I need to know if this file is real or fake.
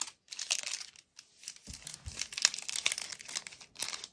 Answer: real